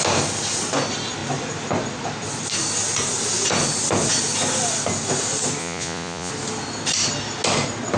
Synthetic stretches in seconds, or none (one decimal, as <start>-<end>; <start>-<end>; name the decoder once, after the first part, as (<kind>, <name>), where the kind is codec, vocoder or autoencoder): 5.6-6.3 (vocoder, Vocos)